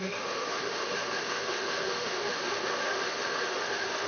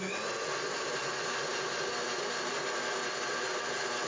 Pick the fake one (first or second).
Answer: first